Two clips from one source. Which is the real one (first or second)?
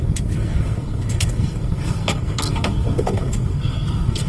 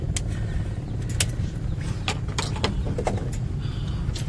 second